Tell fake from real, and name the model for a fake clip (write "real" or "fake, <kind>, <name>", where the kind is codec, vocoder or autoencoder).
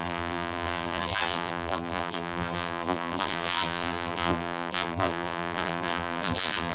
fake, vocoder, BigVGAN v2